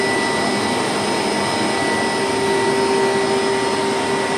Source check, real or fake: real